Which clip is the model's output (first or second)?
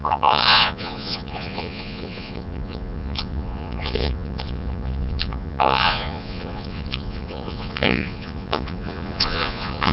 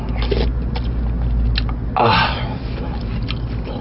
first